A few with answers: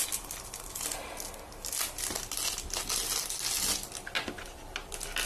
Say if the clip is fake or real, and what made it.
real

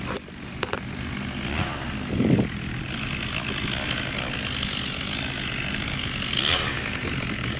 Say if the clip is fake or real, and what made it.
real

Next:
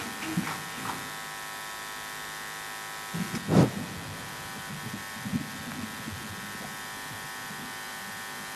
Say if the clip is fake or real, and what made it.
real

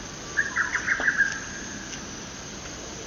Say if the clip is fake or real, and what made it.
real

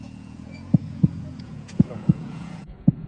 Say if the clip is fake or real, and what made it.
fake, vocoder, Vocos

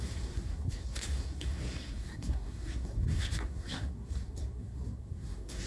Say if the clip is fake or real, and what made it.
fake, codec, SNAC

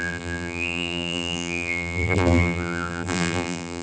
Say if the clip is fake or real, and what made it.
fake, vocoder, BigVGAN v2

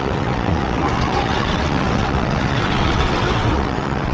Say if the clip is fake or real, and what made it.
fake, vocoder, WaveNeXt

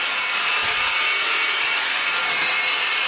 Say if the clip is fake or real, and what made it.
real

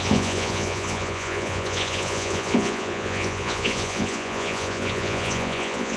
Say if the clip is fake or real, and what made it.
fake, vocoder, Vocos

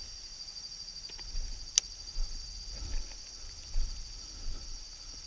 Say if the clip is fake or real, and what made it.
real